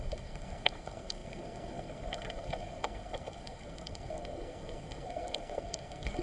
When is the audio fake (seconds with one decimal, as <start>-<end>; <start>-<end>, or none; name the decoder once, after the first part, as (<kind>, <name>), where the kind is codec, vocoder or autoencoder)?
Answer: 0.0-6.2 (codec, SNAC)